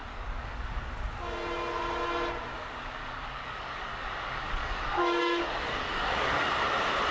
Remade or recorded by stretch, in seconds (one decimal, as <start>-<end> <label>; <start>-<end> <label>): 0.0-0.8 remade; 0.8-2.5 recorded; 2.5-6.5 remade; 6.5-7.1 recorded